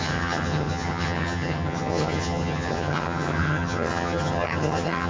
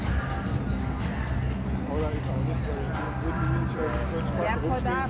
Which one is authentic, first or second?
second